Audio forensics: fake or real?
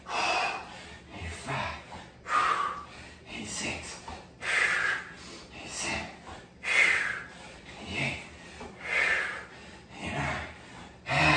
real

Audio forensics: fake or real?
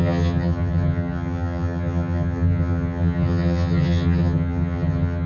fake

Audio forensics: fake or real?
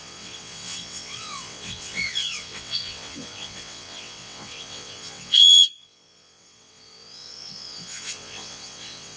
fake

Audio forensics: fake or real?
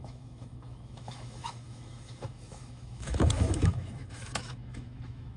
fake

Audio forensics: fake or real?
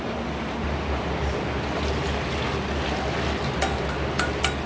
real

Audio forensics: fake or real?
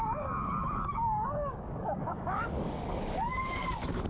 fake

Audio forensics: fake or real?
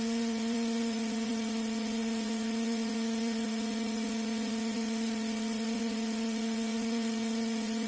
fake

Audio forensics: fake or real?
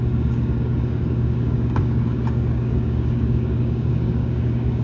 fake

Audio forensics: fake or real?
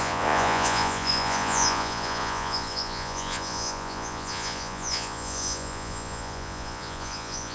fake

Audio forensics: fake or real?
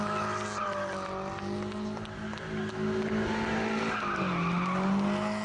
real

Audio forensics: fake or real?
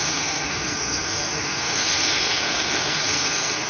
fake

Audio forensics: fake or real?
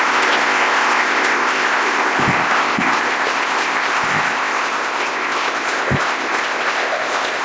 fake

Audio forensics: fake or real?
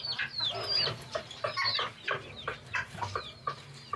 fake